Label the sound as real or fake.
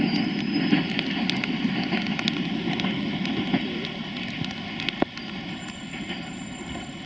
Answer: real